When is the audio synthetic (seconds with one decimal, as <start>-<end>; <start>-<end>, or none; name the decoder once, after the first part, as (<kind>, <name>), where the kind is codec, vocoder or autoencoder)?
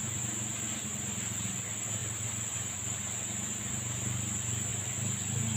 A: 0.0-0.9 (vocoder, BigVGAN v2); 1.6-2.0; 3.6-4.7